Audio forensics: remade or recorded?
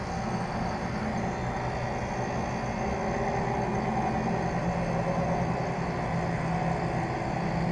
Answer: recorded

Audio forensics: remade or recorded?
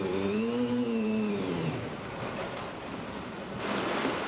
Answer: remade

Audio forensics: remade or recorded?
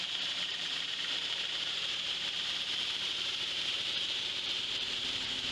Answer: remade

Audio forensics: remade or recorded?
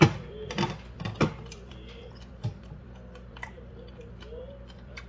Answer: remade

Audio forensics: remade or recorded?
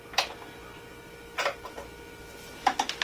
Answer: recorded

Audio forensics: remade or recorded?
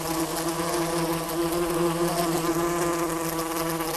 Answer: recorded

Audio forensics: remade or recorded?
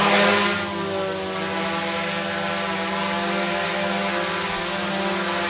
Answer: recorded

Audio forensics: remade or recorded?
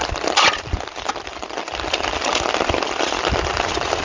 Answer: remade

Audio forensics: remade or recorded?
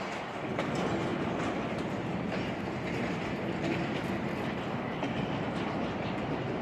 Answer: recorded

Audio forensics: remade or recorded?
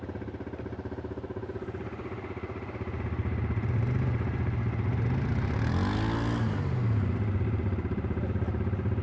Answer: recorded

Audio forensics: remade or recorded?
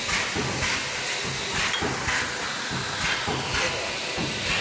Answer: recorded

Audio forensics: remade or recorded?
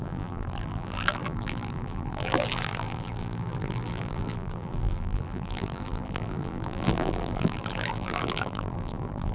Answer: remade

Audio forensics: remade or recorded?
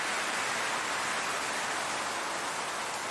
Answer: recorded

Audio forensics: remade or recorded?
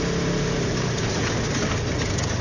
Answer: recorded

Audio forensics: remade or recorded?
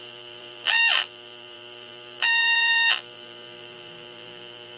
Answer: remade